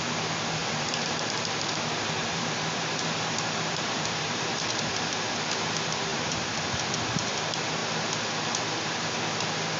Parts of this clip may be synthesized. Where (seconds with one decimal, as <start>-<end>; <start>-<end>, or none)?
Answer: 0.6-4.9; 6.1-6.8